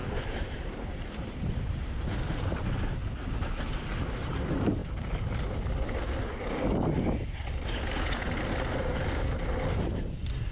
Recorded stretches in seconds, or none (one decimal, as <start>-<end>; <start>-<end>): 2.0-4.8; 5.7-10.5